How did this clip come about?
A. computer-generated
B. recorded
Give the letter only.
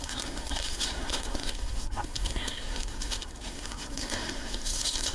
A